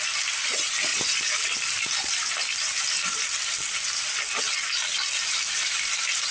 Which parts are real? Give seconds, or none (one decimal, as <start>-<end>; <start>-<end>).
0.0-0.9; 4.4-6.3